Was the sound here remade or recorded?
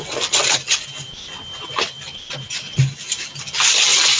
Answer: recorded